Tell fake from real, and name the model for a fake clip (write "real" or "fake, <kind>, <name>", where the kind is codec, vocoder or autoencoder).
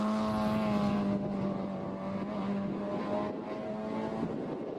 real